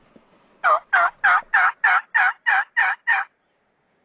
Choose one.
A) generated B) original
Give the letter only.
B